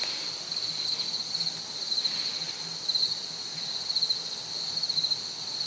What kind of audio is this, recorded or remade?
recorded